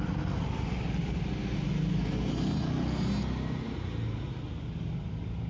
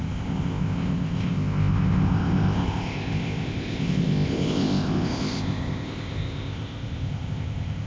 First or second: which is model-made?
second